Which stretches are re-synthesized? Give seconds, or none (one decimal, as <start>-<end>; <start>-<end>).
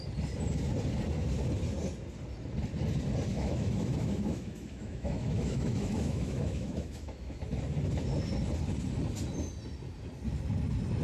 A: 3.3-7.4